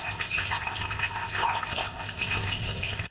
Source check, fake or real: fake